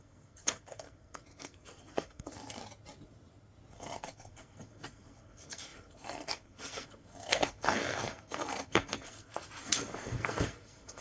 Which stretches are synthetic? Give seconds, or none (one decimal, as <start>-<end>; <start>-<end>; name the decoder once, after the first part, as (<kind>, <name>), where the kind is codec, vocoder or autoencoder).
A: 0.0-2.6 (codec, SNAC); 3.7-11.0